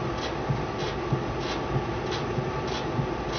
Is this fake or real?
real